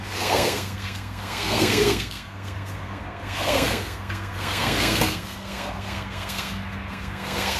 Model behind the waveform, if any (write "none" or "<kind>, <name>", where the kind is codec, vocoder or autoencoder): codec, SNAC